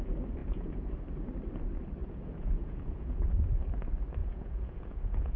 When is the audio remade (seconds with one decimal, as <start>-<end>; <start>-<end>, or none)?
0.4-0.9; 2.0-3.3; 4.2-5.4